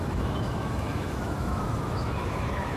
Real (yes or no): no